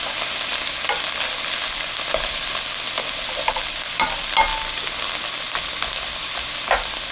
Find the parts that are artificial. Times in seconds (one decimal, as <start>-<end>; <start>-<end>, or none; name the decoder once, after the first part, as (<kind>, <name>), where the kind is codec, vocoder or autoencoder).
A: none

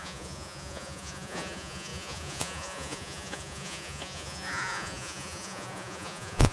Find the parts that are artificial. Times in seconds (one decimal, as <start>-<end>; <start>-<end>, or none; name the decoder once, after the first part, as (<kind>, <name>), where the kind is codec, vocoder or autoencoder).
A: 0.0-6.5 (vocoder, Vocos)

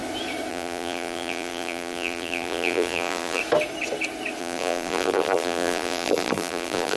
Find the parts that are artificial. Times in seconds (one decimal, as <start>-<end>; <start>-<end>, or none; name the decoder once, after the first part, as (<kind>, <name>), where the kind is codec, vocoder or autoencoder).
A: 0.5-3.4 (vocoder, BigVGAN v2); 4.4-7.0